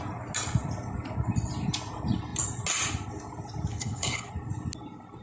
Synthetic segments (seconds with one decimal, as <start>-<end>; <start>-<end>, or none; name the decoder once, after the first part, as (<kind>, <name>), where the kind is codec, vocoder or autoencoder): 3.7-4.3 (codec, HILCodec)